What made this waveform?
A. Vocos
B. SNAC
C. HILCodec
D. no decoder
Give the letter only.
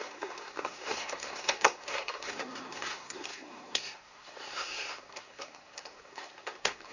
B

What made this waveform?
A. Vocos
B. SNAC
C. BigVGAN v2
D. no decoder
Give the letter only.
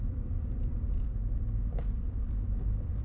C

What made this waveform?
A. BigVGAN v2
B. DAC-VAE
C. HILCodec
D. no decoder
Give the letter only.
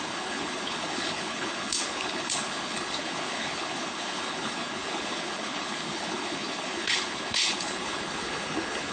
C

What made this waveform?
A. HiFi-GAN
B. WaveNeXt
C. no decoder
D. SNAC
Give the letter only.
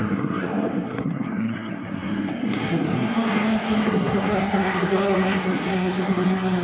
D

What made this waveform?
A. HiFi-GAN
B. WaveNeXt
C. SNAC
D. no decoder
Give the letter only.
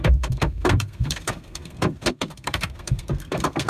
C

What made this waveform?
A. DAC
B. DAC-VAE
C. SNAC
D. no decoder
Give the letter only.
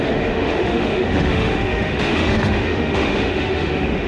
B